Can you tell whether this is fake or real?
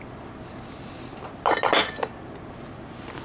real